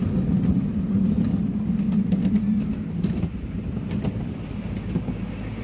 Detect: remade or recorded recorded